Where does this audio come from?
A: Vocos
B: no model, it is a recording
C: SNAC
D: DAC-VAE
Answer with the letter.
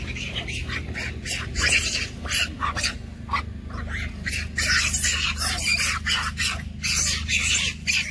B